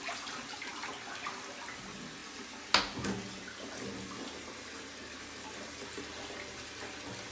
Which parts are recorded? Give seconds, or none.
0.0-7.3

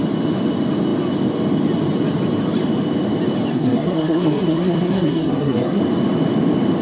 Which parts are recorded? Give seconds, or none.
0.0-3.5; 5.8-6.8

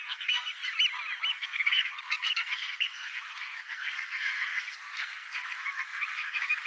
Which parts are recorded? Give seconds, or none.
0.6-1.3